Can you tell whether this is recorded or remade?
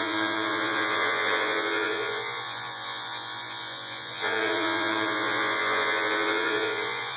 remade